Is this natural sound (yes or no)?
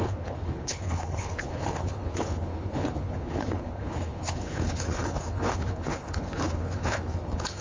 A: no